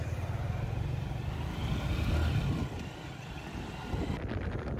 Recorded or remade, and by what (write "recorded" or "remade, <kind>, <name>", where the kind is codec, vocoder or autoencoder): recorded